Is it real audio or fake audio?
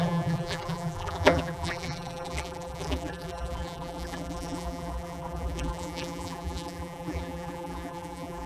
fake